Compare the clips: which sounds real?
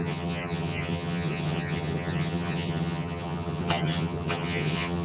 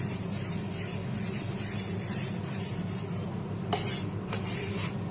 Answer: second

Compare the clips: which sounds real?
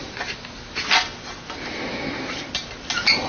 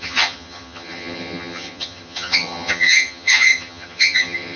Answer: first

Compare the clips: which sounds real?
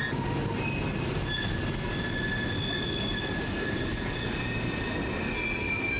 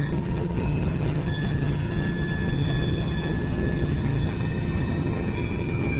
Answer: first